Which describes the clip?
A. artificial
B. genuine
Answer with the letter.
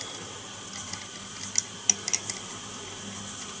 B